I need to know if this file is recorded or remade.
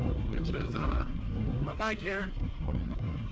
remade